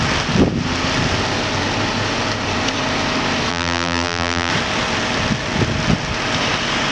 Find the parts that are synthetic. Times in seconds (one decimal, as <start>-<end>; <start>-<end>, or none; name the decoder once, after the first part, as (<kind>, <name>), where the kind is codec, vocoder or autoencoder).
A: 3.5-4.5 (vocoder, BigVGAN v2)